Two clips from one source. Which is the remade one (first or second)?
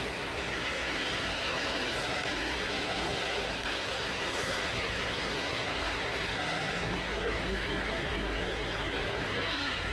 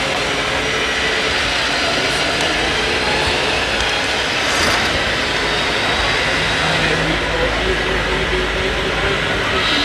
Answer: first